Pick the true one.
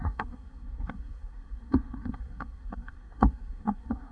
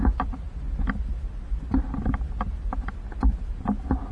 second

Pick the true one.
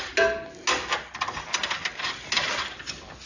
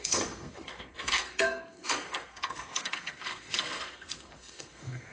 first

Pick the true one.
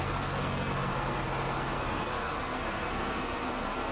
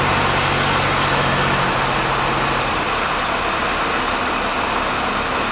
second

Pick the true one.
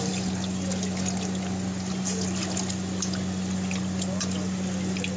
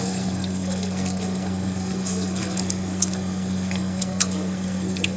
first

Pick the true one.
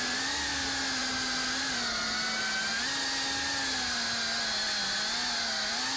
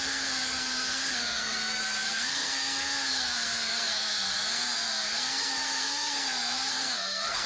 first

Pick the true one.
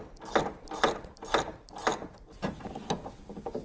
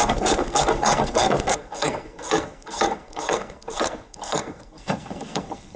first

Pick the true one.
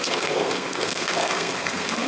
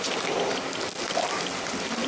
second